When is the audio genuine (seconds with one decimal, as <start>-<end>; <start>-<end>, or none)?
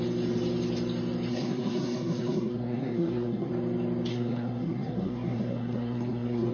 0.0-1.3; 3.5-4.1